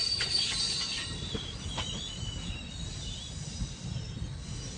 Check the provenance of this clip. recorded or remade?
recorded